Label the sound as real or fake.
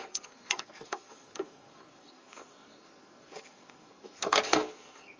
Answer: fake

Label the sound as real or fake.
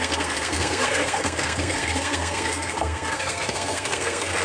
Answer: fake